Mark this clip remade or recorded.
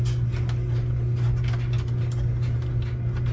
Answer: recorded